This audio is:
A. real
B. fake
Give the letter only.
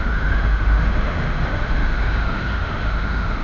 B